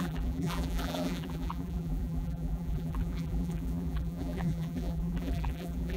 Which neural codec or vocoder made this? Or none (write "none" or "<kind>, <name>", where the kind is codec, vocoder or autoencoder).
vocoder, BigVGAN v2